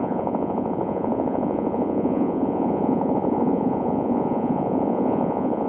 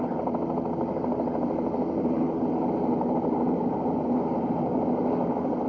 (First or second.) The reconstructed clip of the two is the first